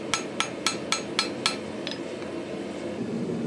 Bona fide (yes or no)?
yes